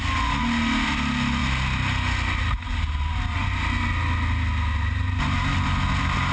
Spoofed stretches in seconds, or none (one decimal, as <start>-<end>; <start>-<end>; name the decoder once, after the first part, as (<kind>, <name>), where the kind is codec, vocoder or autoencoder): none